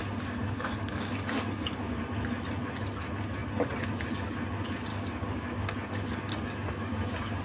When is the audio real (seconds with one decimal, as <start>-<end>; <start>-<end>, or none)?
0.0-0.4; 2.0-4.9